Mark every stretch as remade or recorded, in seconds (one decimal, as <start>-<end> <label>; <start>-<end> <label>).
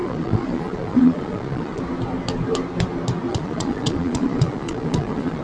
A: 0.0-1.8 remade; 1.8-3.3 recorded; 3.3-5.4 remade